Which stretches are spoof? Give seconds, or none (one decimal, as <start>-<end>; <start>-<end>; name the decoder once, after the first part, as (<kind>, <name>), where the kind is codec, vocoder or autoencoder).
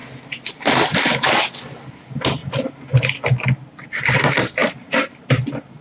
2.4-3.0 (vocoder, BigVGAN v2); 4.6-5.3